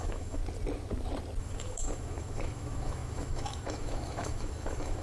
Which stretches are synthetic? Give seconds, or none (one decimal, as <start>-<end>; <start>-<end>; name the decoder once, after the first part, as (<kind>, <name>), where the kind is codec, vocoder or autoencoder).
0.0-0.4 (autoencoder, DAC-VAE); 1.4-5.0